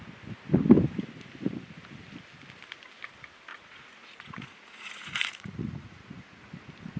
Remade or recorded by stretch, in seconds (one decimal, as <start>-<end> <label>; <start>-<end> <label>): 0.0-3.5 recorded; 3.5-6.4 remade; 6.4-7.0 recorded